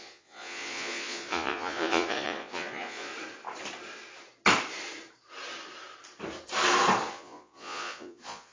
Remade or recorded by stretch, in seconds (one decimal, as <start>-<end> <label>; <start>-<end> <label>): 0.0-3.1 remade; 3.1-7.1 recorded; 7.1-8.5 remade